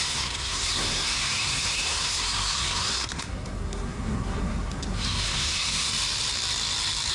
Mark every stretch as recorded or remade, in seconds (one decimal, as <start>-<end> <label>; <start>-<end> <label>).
0.0-5.9 remade; 5.9-7.1 recorded